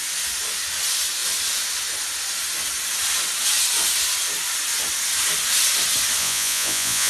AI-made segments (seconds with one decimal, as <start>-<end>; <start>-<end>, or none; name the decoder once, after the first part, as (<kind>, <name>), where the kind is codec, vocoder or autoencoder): 6.2-7.1 (vocoder, Vocos)